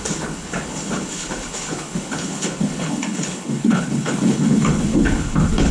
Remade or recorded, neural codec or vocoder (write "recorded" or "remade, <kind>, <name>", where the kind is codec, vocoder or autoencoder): remade, codec, HILCodec